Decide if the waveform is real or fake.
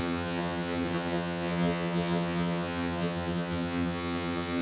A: fake